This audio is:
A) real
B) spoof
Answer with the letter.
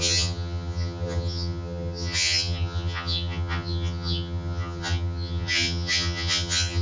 B